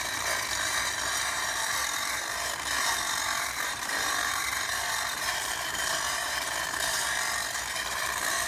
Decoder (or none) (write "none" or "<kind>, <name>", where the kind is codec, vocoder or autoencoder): vocoder, BigVGAN v2